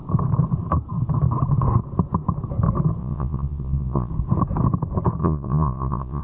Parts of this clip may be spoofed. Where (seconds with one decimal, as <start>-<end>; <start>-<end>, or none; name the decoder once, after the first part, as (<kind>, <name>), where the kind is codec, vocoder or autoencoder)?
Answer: 3.0-4.1 (vocoder, Vocos); 5.2-6.2